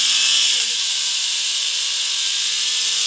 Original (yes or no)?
no